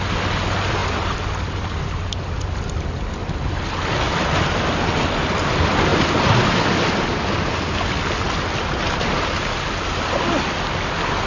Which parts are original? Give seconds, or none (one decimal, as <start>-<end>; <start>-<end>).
0.0-11.3